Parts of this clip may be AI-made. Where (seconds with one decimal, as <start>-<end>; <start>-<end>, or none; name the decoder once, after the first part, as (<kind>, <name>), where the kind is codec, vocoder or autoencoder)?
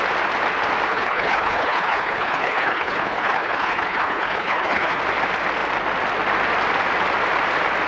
0.9-5.0 (codec, HILCodec)